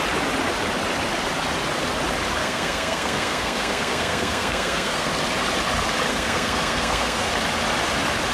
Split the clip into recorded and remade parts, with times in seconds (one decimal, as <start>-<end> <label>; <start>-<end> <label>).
0.0-2.4 recorded; 2.4-5.1 remade; 5.1-6.1 recorded; 6.1-7.3 remade; 7.3-8.3 recorded